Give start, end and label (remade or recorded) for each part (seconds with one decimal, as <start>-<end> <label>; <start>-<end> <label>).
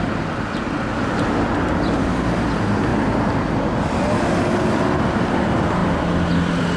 0.0-6.8 recorded